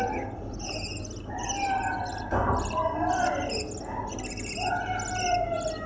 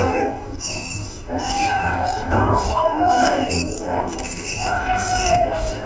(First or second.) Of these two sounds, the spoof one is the second